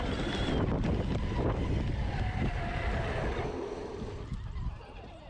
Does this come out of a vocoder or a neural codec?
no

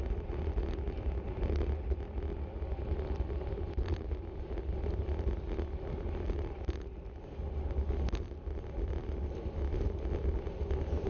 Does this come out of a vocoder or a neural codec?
no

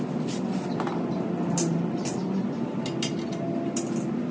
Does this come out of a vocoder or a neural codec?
no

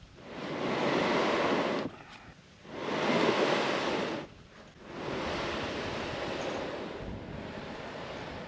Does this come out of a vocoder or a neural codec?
no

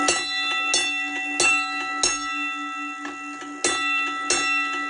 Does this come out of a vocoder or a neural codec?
no